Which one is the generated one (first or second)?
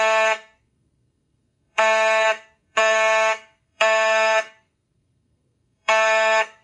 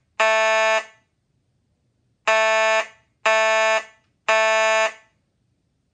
first